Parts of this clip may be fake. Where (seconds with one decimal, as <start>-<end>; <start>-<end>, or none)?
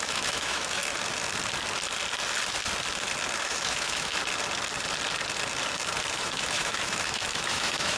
0.0-0.8; 3.4-4.2; 6.1-8.0